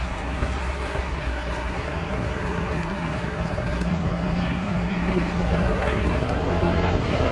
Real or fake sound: fake